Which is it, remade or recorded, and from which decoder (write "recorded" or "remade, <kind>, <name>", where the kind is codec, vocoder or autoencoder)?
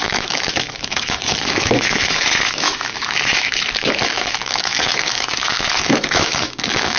remade, autoencoder, DAC-VAE